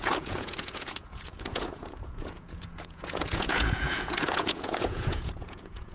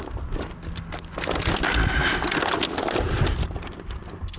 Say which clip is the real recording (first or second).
second